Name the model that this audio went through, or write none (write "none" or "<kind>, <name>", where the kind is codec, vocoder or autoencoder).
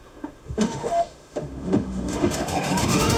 autoencoder, DAC-VAE